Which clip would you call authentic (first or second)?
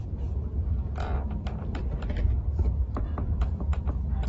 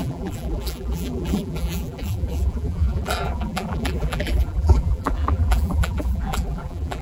first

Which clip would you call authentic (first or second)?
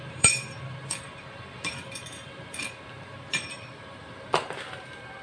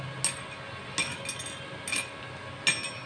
second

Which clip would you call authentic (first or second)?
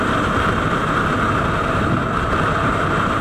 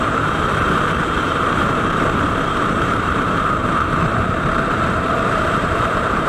first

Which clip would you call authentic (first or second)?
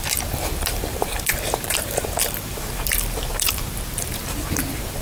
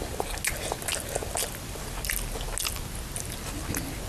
second